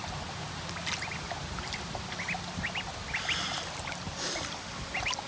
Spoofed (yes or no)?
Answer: no